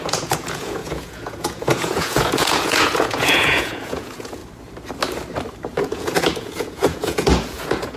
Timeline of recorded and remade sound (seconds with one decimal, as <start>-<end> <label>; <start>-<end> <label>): 0.0-4.4 remade; 4.4-5.8 recorded; 5.8-8.0 remade

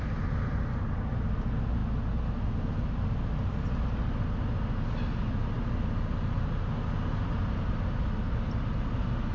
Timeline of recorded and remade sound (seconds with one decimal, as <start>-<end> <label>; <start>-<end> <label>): 0.0-9.3 recorded

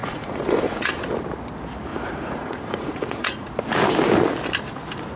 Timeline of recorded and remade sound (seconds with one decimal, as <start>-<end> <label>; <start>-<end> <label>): 0.0-1.0 remade; 1.0-1.9 recorded; 1.9-3.5 remade; 3.5-5.2 recorded